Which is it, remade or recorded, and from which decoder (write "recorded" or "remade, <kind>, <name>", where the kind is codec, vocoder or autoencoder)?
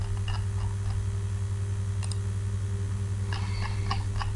recorded